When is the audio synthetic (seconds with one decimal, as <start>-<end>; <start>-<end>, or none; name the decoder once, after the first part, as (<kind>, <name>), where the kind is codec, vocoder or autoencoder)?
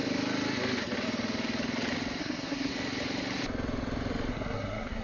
2.2-2.7 (codec, SNAC); 4.3-5.0